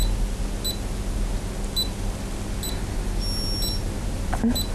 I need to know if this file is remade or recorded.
recorded